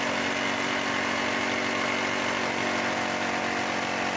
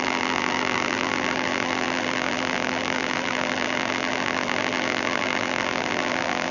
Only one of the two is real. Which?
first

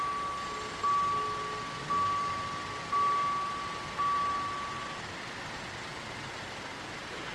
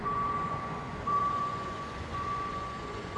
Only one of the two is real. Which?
first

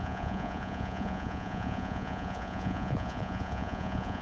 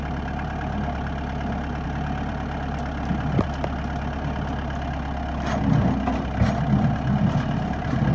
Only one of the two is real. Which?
second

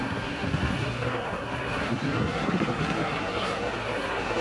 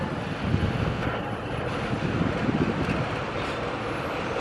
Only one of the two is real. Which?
second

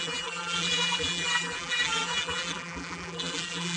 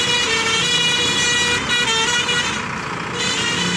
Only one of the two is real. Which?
second